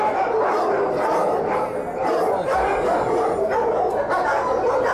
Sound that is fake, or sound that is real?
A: real